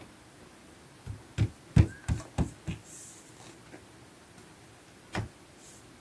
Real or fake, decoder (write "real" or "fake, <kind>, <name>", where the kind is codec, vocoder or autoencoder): real